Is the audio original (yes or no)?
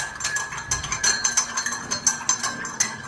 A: yes